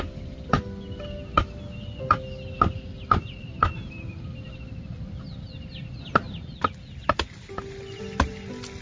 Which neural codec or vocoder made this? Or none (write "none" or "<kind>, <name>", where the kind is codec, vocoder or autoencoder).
none